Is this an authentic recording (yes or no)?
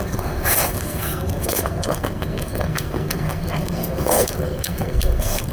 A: no